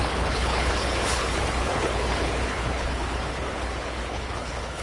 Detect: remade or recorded remade